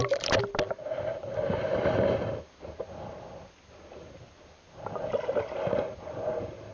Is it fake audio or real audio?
real